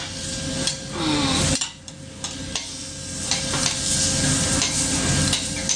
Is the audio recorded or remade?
recorded